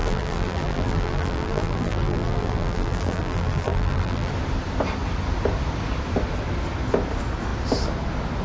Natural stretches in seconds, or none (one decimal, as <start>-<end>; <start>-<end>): 4.3-8.4